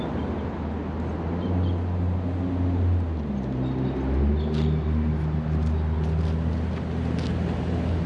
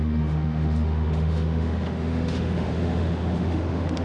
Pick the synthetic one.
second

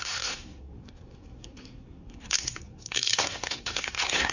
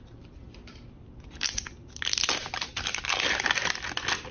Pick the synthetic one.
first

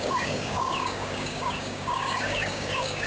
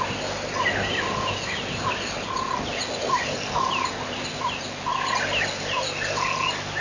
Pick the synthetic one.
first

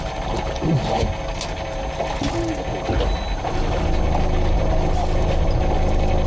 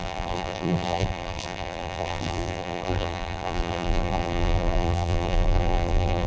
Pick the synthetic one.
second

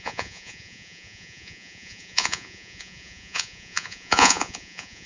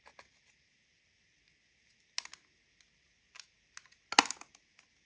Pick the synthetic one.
first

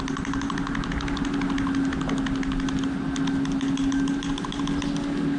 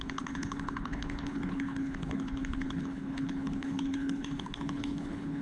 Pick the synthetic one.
second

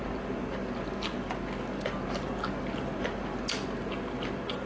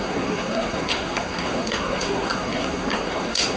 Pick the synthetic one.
second